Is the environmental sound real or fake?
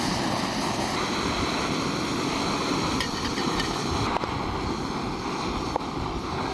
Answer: real